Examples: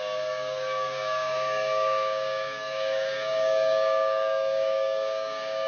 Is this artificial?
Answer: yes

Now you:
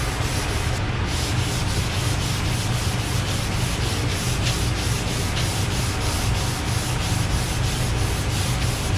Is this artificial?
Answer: no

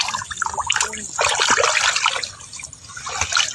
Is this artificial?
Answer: no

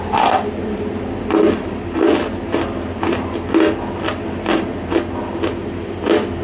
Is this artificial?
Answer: no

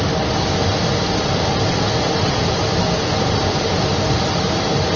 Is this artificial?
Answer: no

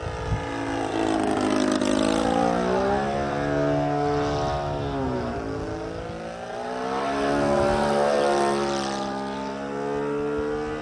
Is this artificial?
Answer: no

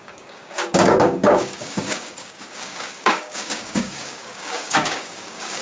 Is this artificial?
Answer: yes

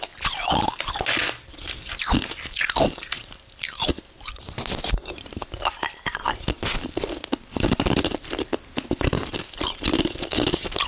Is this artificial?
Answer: no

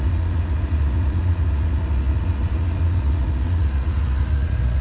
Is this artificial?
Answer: yes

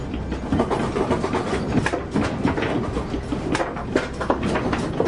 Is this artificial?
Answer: no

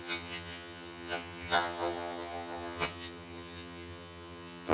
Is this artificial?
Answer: yes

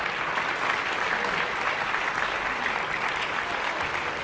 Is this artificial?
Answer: no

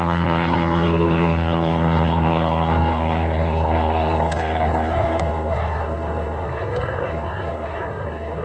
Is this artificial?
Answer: yes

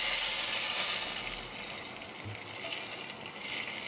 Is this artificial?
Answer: no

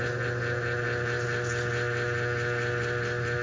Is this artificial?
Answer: no